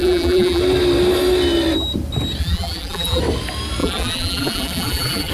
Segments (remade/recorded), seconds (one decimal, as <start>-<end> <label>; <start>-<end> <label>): 0.0-0.6 remade; 0.6-2.4 recorded; 2.4-3.2 remade; 3.2-3.8 recorded; 3.8-5.3 remade